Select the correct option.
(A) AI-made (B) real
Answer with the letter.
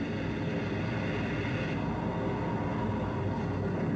B